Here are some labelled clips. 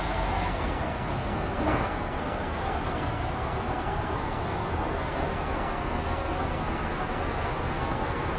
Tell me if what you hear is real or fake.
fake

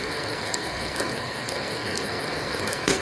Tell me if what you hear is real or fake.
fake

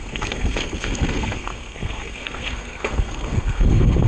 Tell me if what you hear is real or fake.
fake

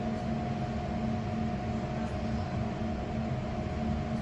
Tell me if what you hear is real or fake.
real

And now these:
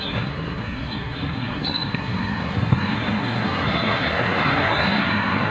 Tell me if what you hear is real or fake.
fake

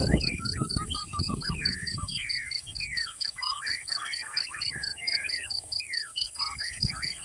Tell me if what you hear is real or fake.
fake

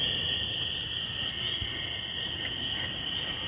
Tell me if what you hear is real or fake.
real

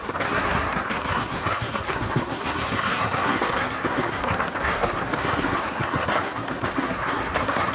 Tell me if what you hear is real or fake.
fake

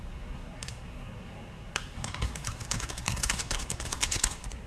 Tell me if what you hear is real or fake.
fake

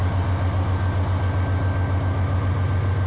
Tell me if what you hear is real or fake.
real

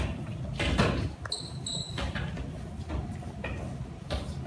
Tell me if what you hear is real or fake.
real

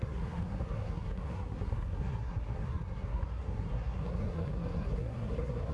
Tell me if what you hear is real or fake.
fake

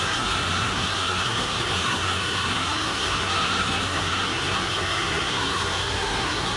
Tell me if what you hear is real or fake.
fake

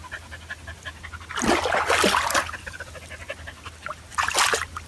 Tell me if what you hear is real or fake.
real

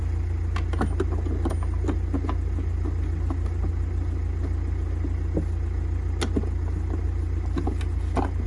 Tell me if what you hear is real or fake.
real